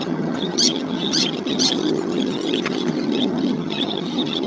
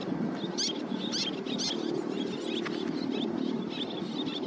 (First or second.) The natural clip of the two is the second